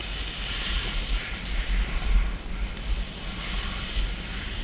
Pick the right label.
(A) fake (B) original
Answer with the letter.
B